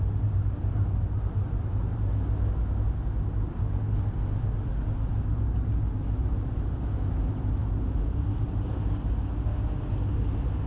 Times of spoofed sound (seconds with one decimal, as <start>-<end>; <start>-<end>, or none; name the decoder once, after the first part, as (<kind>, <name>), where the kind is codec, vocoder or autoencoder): none